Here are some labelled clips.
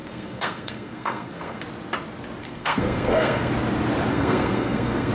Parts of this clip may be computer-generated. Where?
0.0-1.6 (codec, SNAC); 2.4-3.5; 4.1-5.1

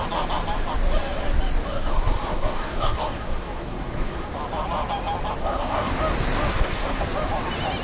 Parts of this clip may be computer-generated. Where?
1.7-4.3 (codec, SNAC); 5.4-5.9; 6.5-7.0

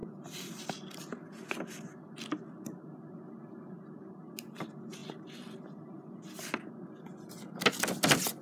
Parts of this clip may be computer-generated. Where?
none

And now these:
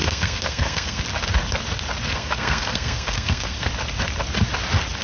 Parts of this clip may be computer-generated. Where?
0.0-1.0 (codec, SNAC); 2.1-3.7

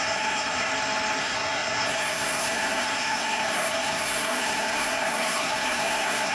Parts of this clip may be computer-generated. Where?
0.0-0.7 (codec, SNAC); 1.2-6.3

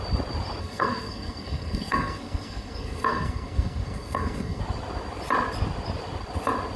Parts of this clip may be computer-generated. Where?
0.6-4.6 (codec, SNAC)